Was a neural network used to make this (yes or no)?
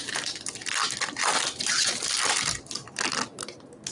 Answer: no